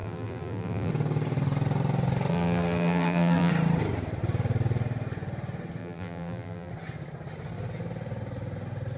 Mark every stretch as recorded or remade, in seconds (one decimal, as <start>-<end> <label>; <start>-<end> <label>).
0.0-0.9 remade; 0.9-2.3 recorded; 2.3-3.5 remade; 3.5-5.8 recorded; 5.8-6.7 remade; 6.7-9.0 recorded